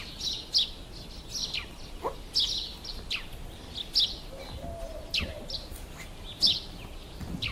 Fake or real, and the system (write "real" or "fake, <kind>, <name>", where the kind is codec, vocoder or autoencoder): real